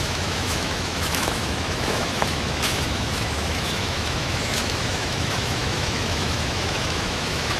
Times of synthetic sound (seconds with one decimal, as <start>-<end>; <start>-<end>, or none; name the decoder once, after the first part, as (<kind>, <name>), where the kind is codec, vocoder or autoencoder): 0.0-7.6 (autoencoder, DAC-VAE)